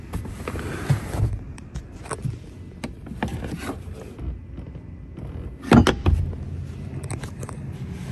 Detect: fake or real real